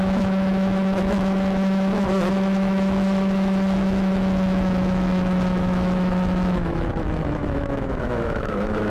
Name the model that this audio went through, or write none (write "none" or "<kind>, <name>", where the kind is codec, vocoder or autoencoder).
autoencoder, DAC-VAE